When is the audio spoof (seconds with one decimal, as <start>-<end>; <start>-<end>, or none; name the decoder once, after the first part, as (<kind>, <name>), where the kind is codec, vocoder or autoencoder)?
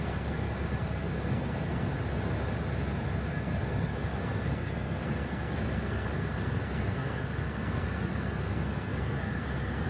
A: 0.0-1.9 (codec, SNAC); 3.3-9.9